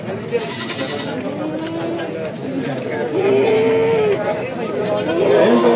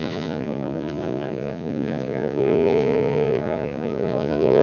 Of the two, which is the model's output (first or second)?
second